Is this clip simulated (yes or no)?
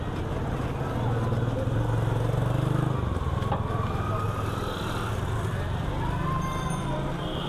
no